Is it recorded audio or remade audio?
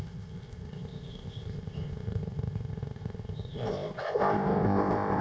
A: remade